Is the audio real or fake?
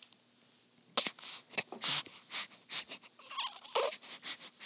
real